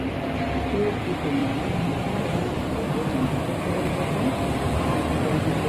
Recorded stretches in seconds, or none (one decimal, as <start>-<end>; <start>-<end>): 0.0-1.4; 2.9-5.7